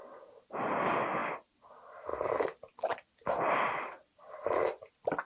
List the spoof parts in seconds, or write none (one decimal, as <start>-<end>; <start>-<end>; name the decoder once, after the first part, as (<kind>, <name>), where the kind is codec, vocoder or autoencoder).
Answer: 1.2-1.7 (vocoder, BigVGAN v2); 2.1-4.5